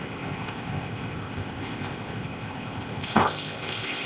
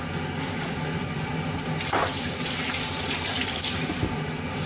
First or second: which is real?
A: second